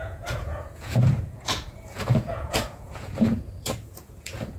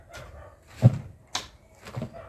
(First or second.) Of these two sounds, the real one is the second